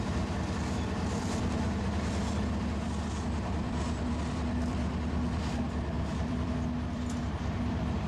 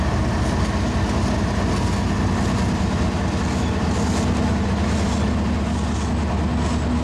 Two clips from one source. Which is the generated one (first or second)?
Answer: first